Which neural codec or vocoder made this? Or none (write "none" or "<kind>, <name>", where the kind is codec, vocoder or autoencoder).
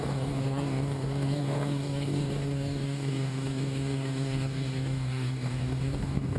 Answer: codec, DAC